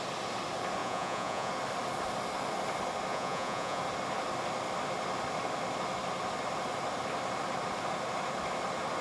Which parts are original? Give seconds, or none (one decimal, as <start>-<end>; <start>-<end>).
0.0-0.8; 1.5-3.1; 3.8-9.0